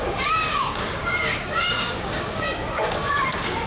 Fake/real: fake